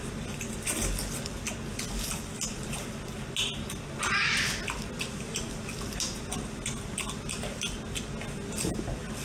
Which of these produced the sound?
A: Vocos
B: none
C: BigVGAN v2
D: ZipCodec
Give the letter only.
B